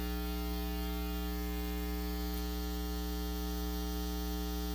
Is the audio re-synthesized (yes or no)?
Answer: no